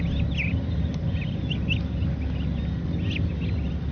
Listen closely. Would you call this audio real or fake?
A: real